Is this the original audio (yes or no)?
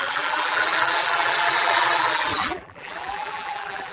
no